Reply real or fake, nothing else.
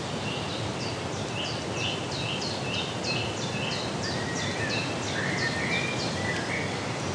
real